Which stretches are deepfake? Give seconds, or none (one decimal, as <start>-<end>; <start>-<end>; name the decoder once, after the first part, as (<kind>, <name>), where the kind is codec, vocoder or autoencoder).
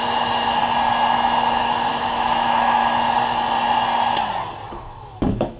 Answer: 0.0-0.6 (autoencoder, DAC-VAE); 1.9-2.8; 4.7-5.6